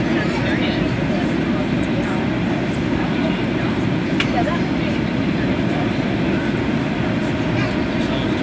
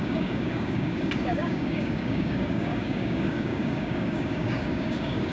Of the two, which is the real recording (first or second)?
first